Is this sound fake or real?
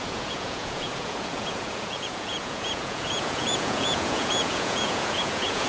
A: fake